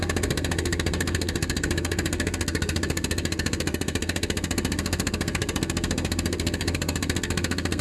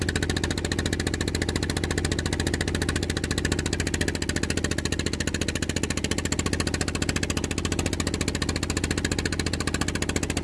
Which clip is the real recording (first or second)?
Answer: second